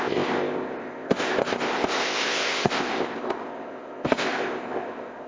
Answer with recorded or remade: remade